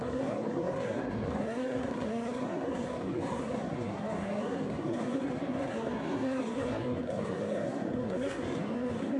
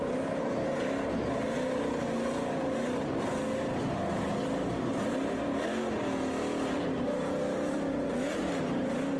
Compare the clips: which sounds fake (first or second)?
first